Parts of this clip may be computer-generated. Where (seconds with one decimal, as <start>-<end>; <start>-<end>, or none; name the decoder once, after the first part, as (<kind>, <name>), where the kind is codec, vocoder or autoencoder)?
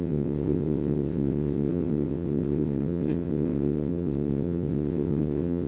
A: 0.0-5.7 (vocoder, WaveNeXt)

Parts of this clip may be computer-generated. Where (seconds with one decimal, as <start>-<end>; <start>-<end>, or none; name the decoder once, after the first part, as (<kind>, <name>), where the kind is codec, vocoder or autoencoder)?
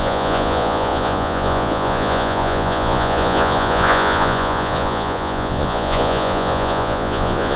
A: 0.0-7.6 (vocoder, Vocos)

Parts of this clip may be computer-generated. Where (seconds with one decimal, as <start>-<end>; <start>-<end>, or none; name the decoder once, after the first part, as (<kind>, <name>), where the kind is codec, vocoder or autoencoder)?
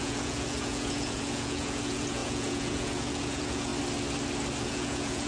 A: 0.0-3.7 (vocoder, Vocos); 4.6-5.3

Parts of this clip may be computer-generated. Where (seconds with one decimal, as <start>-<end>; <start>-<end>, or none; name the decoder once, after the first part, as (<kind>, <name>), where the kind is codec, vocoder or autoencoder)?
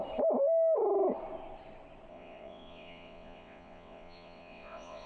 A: 2.1-5.1 (vocoder, WaveNeXt)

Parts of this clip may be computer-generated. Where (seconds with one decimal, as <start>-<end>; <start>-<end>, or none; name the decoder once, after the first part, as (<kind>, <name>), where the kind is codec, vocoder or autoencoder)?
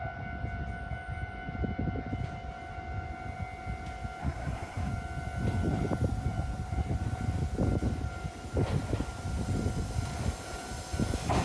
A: 4.2-4.9 (codec, SNAC)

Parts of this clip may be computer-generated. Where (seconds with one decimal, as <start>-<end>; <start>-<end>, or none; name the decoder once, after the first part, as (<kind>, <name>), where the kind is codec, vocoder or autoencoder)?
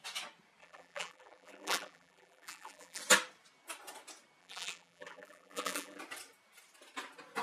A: 0.6-3.0 (vocoder, BigVGAN v2); 4.4-6.0